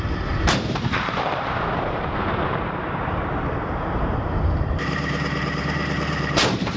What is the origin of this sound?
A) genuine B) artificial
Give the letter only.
B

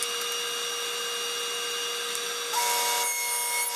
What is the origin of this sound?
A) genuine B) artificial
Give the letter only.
A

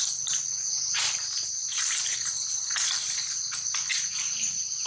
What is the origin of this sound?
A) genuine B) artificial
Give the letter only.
A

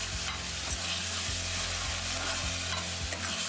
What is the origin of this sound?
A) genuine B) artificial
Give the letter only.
A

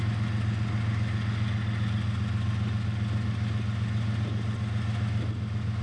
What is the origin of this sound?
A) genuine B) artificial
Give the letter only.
A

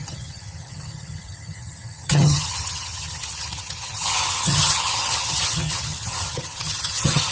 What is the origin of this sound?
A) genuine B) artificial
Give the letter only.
B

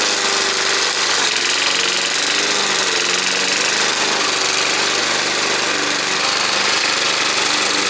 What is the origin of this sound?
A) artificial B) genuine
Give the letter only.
B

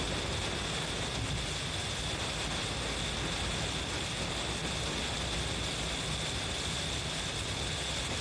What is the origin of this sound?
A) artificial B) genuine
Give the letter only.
B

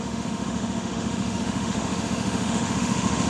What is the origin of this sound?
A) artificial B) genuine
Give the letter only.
A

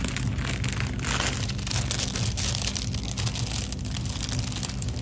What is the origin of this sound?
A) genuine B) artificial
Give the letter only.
A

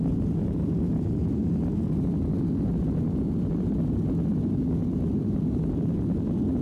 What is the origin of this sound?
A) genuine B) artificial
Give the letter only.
A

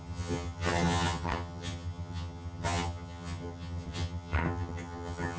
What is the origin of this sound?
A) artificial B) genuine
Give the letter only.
A